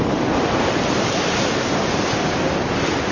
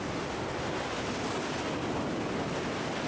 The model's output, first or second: first